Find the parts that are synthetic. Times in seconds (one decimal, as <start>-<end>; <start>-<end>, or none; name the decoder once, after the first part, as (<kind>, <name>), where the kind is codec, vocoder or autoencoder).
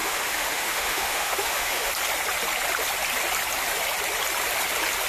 0.0-1.9 (autoencoder, DAC-VAE)